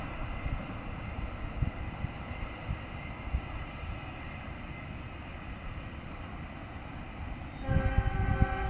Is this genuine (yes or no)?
yes